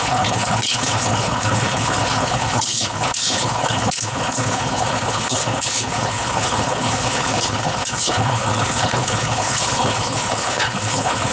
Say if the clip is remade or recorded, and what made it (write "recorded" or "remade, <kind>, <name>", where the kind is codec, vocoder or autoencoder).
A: remade, codec, HILCodec